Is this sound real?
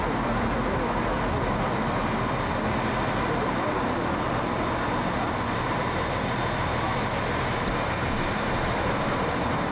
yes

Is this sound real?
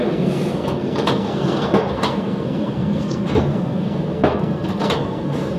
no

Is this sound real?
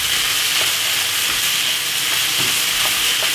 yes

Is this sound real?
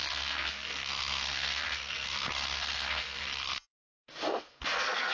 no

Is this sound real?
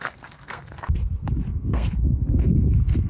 no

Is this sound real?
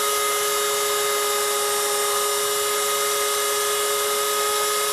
yes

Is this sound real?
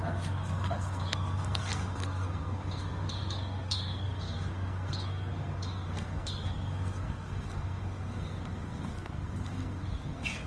no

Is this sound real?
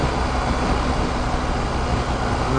yes